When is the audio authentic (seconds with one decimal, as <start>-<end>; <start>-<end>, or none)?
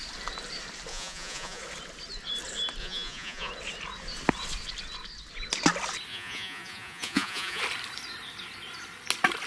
0.0-0.9; 1.6-2.8; 3.5-6.1; 7.6-9.5